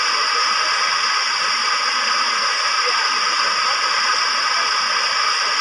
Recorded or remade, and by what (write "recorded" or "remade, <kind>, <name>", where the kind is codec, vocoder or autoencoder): recorded